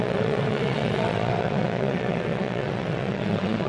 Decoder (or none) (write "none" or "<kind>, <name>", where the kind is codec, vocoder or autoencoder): vocoder, WaveNeXt